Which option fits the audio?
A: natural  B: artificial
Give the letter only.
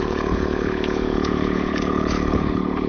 B